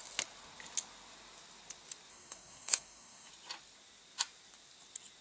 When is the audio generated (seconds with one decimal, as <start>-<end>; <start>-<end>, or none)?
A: 2.1-3.3

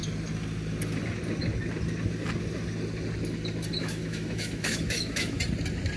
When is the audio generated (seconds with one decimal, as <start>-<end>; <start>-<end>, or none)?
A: 3.8-5.4

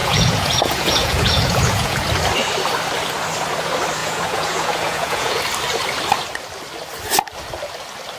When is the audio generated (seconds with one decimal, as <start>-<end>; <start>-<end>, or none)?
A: 0.0-2.0; 4.0-5.4

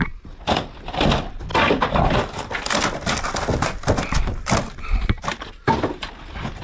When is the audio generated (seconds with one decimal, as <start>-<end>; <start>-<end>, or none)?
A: none

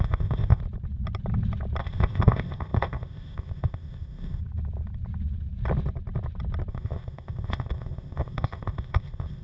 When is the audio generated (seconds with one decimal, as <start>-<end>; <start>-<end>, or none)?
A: 0.0-0.6; 1.8-4.4; 6.7-9.4

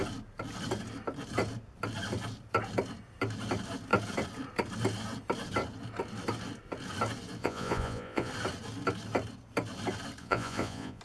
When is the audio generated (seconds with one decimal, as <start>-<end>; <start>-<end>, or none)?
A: 7.4-8.3; 10.2-11.0

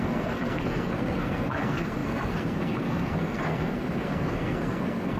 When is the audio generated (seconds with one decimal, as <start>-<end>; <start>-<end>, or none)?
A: 0.0-5.2

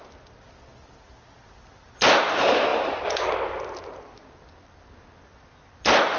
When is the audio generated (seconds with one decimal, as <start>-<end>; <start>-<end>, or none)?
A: none